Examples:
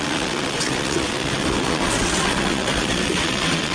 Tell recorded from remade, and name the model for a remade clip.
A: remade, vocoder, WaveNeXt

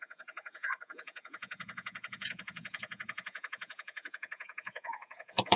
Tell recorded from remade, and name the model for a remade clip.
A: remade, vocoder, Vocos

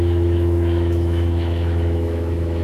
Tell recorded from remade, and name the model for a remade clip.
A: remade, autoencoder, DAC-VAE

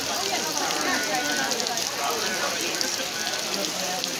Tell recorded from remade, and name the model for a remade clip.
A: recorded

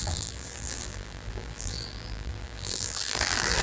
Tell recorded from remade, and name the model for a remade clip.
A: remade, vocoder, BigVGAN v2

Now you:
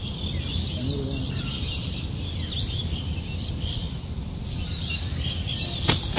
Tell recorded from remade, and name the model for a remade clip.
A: recorded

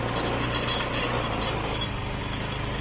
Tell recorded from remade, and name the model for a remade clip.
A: recorded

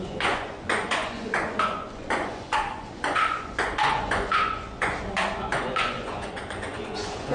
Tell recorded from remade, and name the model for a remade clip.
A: remade, vocoder, Vocos